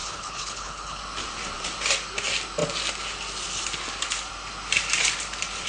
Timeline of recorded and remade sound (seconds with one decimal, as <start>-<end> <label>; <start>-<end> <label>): 0.0-1.0 remade; 1.0-5.7 recorded